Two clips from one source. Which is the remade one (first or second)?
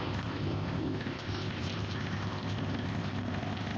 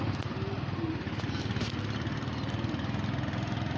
first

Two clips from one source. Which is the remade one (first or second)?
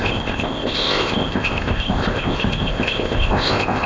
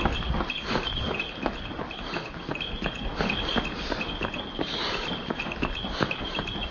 first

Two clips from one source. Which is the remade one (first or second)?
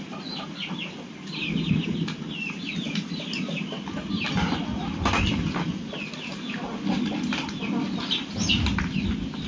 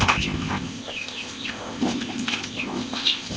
second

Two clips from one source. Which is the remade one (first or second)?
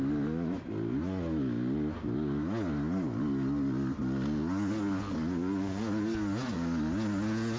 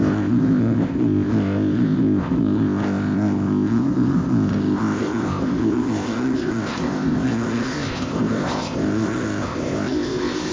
second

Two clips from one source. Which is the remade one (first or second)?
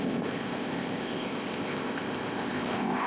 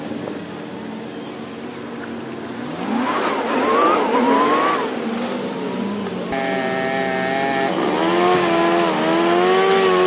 first